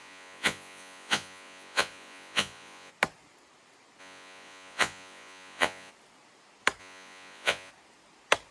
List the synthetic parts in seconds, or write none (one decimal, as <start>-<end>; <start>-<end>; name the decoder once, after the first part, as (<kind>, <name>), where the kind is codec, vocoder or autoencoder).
0.0-2.9 (vocoder, Vocos); 4.0-5.9; 6.8-7.7